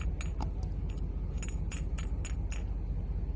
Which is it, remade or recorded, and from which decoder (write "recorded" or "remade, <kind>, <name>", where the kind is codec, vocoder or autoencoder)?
recorded